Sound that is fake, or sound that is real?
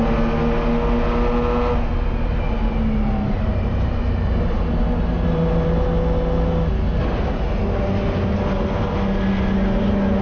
real